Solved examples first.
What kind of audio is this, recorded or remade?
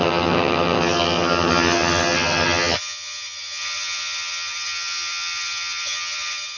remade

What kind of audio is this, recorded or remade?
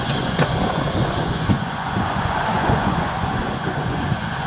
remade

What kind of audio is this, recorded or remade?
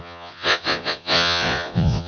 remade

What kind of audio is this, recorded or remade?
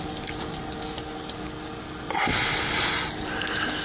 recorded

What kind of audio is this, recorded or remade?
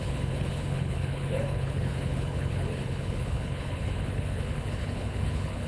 remade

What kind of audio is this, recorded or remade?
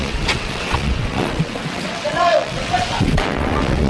remade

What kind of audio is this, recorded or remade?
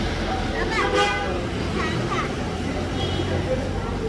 recorded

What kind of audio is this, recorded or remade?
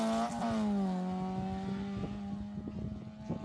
recorded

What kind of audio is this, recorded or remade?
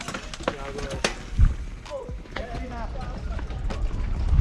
recorded